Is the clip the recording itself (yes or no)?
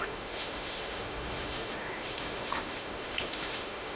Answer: no